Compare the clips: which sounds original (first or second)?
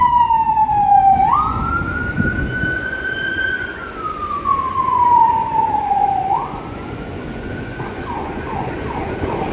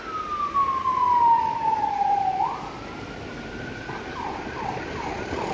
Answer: second